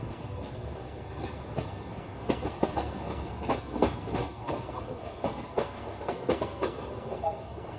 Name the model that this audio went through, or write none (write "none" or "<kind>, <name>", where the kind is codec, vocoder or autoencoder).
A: codec, SNAC